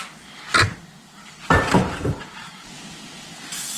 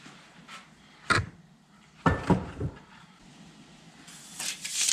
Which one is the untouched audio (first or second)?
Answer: first